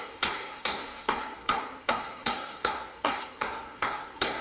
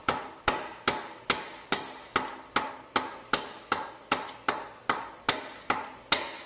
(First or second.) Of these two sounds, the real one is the second